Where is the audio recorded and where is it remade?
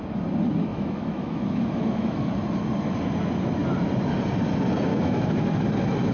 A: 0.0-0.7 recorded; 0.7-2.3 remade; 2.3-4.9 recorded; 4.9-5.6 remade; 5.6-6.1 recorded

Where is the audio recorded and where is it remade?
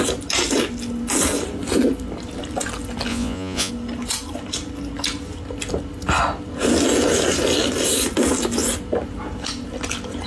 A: 0.0-3.1 recorded; 3.1-3.7 remade; 3.7-10.3 recorded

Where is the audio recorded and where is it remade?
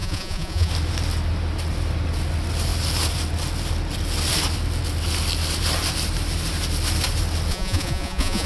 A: 0.0-0.7 remade; 0.7-7.5 recorded; 7.5-8.5 remade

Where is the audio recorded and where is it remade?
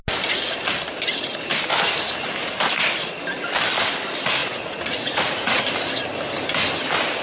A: 0.0-4.4 recorded; 4.4-5.6 remade; 5.6-7.2 recorded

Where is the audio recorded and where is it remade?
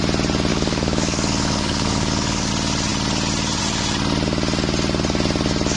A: 0.0-0.5 recorded; 0.5-2.5 remade; 2.5-5.8 recorded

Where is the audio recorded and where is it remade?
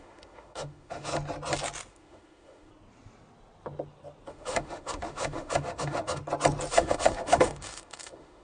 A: 0.0-1.1 remade; 1.1-1.9 recorded; 1.9-2.7 remade; 2.7-4.3 recorded; 4.3-6.2 remade; 6.2-6.7 recorded; 6.7-8.4 remade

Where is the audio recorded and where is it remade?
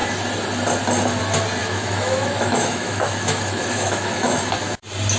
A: 0.0-1.6 recorded; 1.6-4.5 remade; 4.5-5.2 recorded